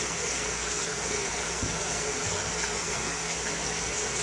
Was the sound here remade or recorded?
remade